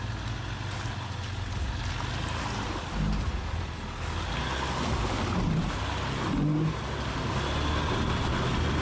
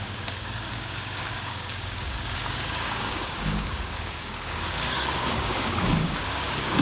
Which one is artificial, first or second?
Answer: second